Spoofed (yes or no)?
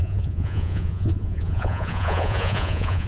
yes